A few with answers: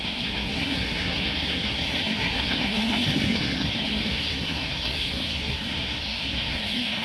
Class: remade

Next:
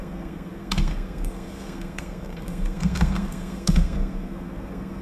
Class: remade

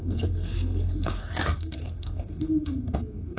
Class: remade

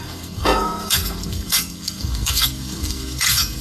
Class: remade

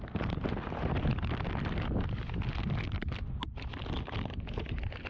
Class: recorded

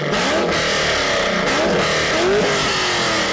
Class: recorded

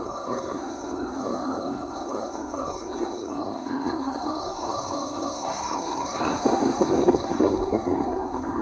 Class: remade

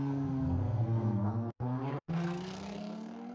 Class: remade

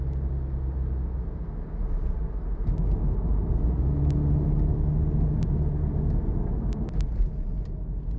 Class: recorded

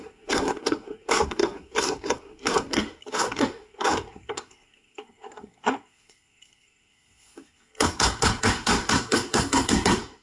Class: remade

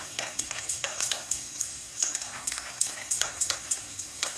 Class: remade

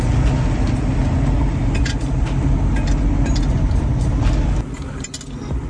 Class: recorded